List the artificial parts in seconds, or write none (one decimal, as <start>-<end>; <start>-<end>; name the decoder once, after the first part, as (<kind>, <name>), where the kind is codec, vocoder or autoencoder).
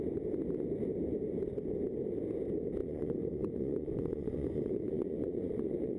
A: 2.8-6.0 (vocoder, Vocos)